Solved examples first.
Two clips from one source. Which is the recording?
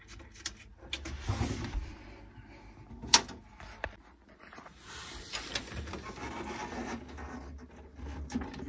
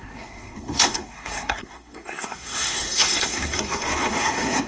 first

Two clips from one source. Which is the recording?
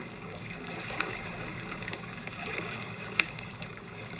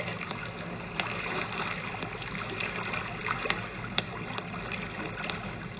second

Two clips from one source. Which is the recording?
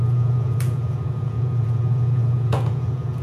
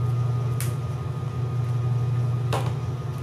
second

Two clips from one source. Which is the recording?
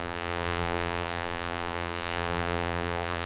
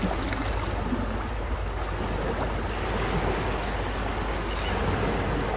second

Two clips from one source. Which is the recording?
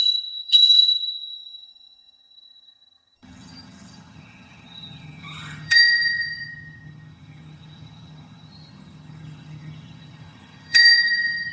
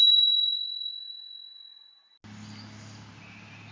second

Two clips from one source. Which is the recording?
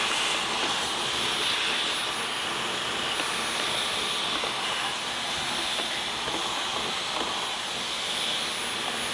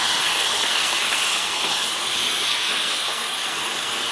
first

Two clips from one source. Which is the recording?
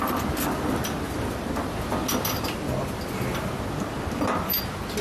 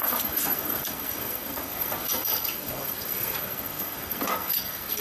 first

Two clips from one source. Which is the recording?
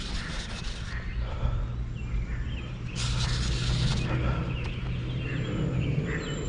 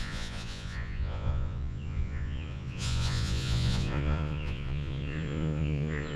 first